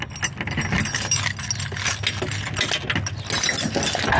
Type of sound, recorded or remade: recorded